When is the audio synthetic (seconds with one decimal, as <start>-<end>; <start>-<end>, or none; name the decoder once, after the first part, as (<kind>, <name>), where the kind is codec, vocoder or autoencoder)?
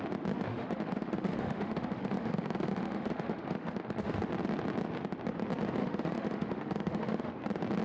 0.5-4.2 (autoencoder, DAC-VAE); 5.8-7.3